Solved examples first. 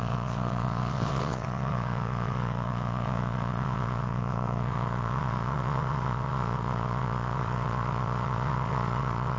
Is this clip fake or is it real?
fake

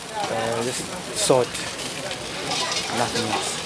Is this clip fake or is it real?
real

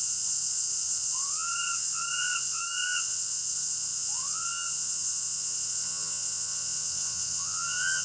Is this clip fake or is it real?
fake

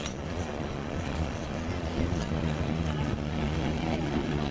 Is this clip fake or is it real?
fake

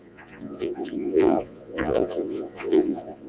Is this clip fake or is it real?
fake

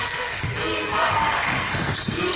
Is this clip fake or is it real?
fake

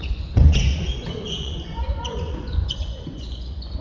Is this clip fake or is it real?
fake